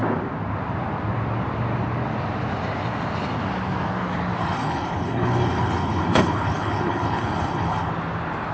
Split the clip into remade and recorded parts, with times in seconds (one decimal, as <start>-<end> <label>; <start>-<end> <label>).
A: 0.0-4.4 recorded; 4.4-7.9 remade; 7.9-8.5 recorded